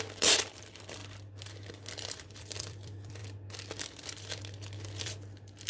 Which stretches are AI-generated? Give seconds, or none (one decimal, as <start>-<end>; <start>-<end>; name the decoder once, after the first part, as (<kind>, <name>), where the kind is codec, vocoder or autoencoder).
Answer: 0.0-1.0 (vocoder, BigVGAN v2); 2.1-3.2; 5.0-5.7